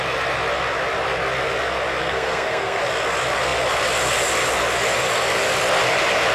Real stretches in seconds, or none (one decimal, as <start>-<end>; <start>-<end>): 0.0-2.0; 2.8-6.3